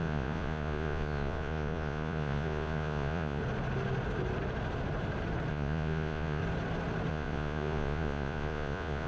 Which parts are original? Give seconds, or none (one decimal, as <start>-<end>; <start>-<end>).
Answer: 3.4-5.5; 6.4-7.1